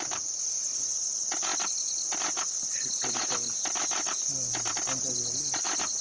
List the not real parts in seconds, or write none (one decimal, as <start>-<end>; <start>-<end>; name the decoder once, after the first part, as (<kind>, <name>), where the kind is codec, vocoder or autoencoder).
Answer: none